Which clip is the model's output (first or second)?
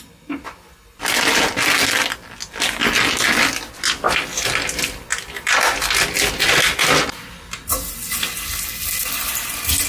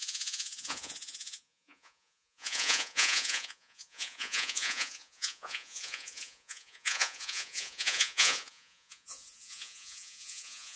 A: second